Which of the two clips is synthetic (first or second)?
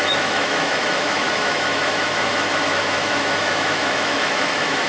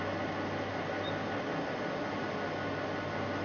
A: first